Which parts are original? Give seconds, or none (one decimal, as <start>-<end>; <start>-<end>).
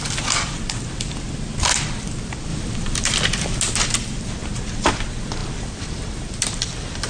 0.0-2.5; 3.6-5.4